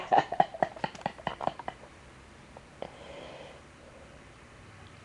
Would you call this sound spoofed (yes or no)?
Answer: yes